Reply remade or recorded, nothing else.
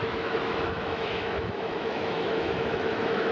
remade